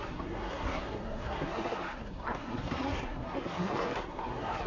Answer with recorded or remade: remade